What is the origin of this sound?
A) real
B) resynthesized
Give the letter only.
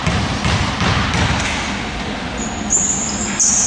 A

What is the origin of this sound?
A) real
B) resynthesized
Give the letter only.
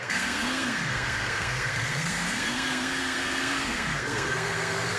B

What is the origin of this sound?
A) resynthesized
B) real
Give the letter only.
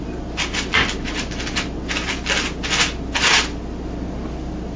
B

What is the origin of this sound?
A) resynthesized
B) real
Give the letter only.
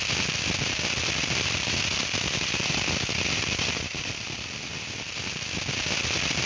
B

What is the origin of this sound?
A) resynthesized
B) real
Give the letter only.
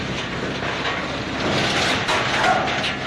B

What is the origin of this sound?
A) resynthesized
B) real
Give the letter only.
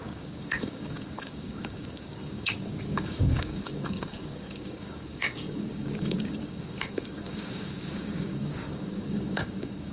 A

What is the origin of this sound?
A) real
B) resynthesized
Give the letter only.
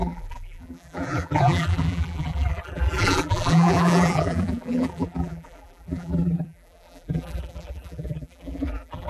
B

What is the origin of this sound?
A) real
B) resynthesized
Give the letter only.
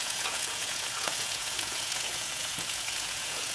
B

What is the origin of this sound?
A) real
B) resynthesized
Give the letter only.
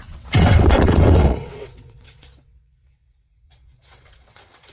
B